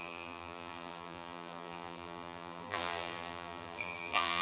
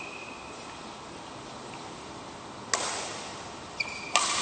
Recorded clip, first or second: second